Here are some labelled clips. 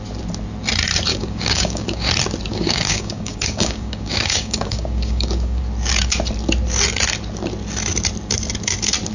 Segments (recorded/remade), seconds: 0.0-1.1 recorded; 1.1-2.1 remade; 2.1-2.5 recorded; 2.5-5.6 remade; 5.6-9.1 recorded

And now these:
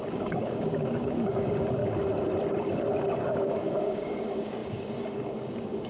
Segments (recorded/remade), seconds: 0.0-1.8 remade; 1.8-3.2 recorded; 3.2-5.9 remade

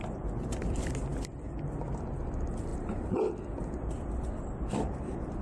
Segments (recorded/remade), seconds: 0.0-5.4 recorded

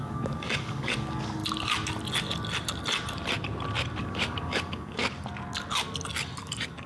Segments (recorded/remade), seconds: 0.0-1.4 remade; 1.4-4.0 recorded; 4.0-5.0 remade; 5.0-6.4 recorded; 6.4-6.9 remade

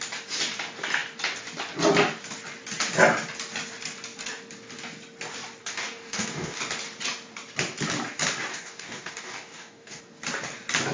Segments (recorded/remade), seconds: 0.0-5.6 recorded; 5.6-6.6 remade; 6.6-8.5 recorded; 8.5-10.0 remade; 10.0-10.9 recorded